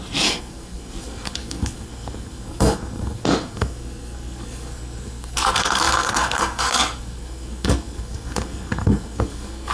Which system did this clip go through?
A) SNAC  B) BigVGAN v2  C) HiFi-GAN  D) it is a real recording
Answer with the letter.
A